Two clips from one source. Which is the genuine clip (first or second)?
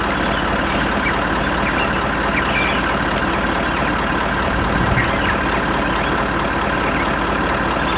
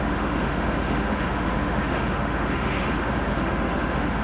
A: first